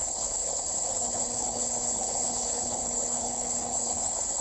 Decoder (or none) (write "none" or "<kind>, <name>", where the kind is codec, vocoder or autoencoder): codec, HILCodec